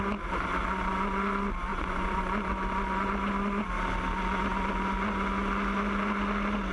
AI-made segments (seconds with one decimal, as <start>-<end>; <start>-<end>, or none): 1.7-2.2